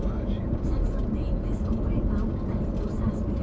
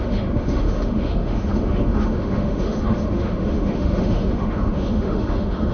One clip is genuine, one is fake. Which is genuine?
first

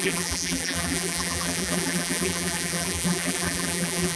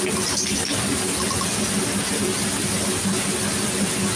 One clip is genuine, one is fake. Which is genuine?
second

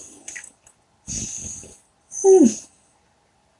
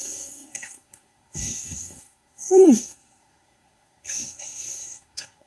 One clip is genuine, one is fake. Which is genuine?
first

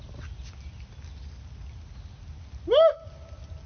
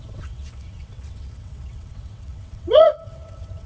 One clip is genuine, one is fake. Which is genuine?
first